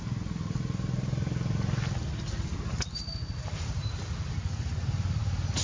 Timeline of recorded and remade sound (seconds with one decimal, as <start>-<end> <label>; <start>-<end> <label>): 0.0-5.6 recorded